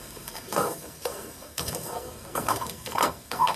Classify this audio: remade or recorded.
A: remade